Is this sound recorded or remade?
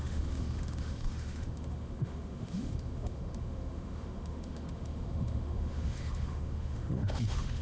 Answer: remade